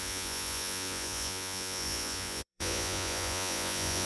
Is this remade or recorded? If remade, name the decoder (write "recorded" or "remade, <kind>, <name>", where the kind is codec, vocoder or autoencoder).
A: remade, vocoder, Vocos